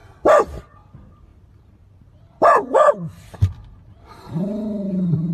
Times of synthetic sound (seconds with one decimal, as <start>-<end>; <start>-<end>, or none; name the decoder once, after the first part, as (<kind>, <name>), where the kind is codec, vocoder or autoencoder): 1.3-4.5 (vocoder, BigVGAN v2)